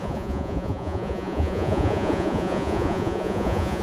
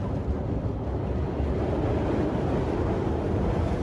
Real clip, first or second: second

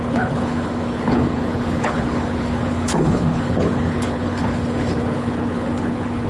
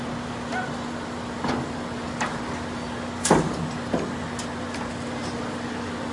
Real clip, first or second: second